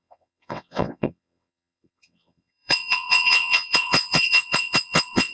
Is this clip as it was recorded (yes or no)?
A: no